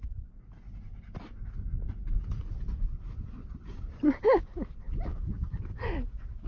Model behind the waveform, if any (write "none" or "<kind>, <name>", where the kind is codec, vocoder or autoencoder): none